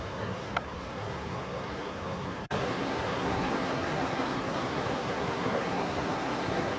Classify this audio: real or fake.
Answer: fake